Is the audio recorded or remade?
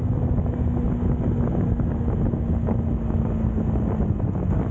recorded